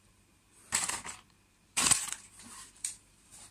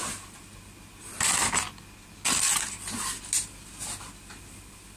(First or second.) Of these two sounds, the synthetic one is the first